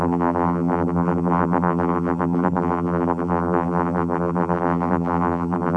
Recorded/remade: remade